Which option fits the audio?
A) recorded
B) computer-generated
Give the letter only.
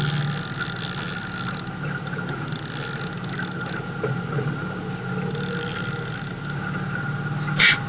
A